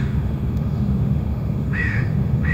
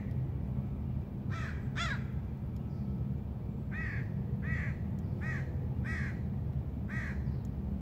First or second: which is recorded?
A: second